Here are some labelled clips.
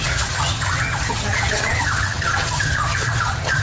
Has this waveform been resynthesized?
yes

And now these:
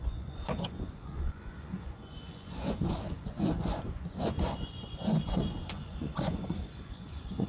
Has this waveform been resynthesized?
yes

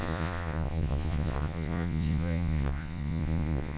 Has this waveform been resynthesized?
yes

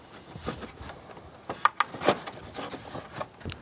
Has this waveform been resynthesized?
no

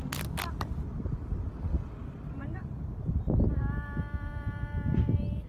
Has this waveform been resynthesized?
no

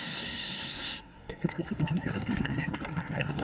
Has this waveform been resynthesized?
yes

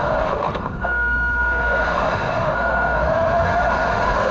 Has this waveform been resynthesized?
yes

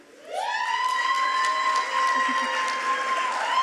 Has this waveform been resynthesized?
yes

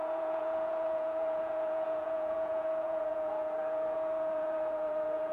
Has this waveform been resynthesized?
yes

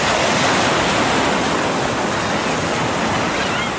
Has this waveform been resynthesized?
no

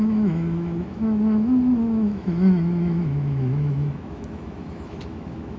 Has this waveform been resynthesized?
yes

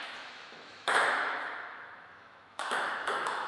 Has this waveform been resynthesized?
yes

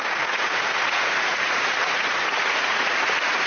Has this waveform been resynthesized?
yes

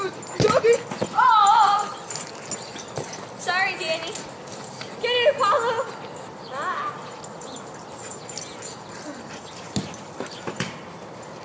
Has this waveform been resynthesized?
no